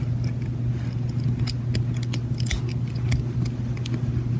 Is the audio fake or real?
real